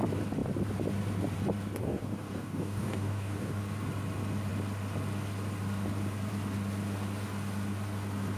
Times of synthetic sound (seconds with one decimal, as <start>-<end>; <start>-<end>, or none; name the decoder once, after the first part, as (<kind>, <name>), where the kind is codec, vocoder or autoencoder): 1.8-3.6 (codec, DAC)